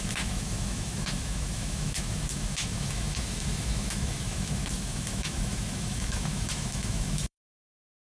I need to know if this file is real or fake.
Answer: fake